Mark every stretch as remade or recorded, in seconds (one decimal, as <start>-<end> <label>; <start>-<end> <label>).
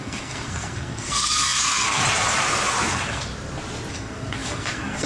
0.0-2.0 remade; 2.0-2.9 recorded; 2.9-3.3 remade; 3.3-3.9 recorded; 3.9-5.1 remade